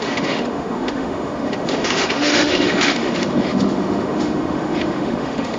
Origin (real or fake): fake